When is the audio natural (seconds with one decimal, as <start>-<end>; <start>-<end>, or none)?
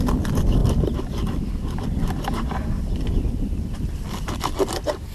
0.6-2.7